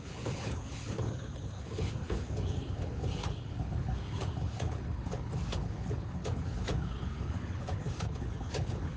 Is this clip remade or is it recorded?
remade